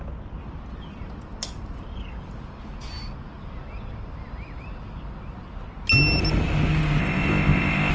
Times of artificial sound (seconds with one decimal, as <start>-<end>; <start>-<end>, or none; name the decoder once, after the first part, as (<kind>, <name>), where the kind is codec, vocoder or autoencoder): 7.0-7.9 (codec, ZipCodec)